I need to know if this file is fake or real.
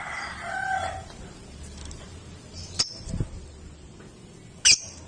real